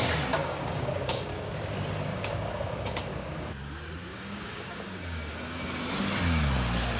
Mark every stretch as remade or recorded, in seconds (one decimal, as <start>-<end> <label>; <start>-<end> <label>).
0.0-0.4 recorded; 0.4-1.5 remade; 1.5-2.1 recorded; 2.1-3.5 remade; 3.5-4.1 recorded; 4.1-5.8 remade; 5.8-7.0 recorded